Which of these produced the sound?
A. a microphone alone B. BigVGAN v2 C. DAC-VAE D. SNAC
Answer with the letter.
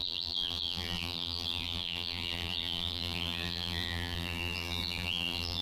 B